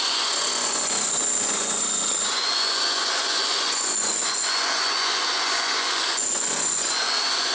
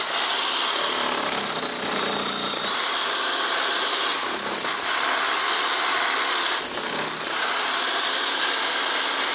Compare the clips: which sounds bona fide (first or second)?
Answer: second